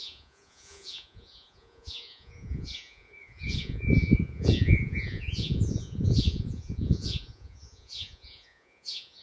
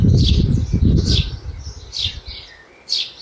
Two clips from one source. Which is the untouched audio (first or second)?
second